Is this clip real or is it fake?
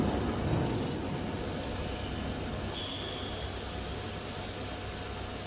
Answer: real